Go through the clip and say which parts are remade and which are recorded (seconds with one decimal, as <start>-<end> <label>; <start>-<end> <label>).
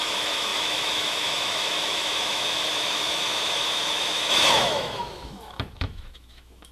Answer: 0.0-6.7 remade